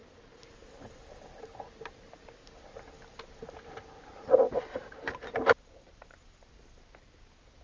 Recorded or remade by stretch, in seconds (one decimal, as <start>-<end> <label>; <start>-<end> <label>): 0.0-7.6 recorded